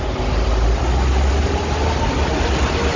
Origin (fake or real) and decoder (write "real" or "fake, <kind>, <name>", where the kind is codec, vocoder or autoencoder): real